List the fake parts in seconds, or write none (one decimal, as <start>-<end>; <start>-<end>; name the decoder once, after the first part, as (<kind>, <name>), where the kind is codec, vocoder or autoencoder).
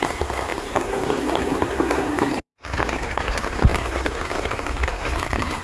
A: 0.0-5.6 (codec, SNAC)